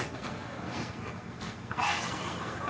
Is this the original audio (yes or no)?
no